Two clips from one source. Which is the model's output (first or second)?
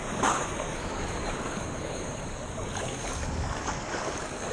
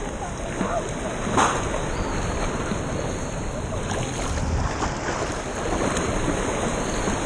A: first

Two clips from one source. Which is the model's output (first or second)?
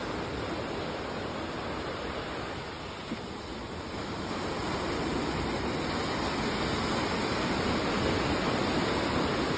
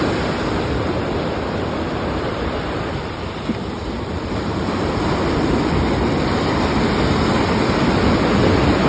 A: second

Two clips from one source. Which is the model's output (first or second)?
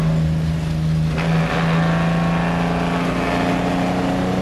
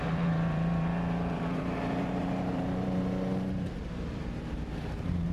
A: second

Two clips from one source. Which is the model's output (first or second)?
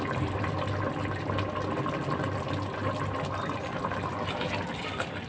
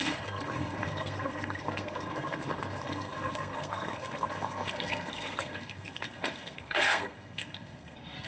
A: second